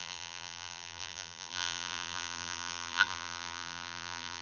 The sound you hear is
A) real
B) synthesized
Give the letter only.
B